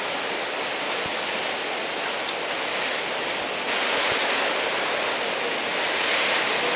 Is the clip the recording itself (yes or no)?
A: yes